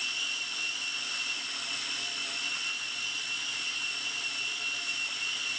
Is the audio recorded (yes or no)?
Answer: yes